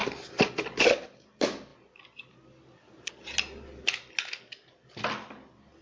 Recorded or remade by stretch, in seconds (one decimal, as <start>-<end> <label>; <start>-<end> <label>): 0.0-5.8 recorded